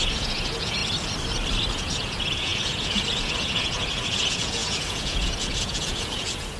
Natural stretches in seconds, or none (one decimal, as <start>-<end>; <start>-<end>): 0.8-1.7